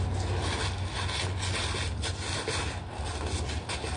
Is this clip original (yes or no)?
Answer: yes